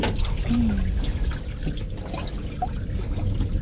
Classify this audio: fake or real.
real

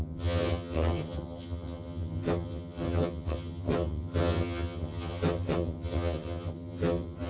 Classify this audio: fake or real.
fake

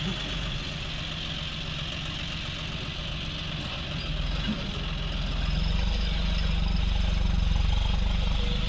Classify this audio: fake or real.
real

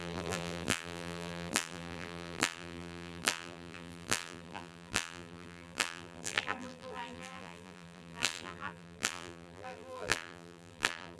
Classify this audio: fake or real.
fake